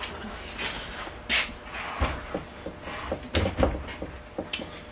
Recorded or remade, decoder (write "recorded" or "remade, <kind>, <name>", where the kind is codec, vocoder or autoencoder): recorded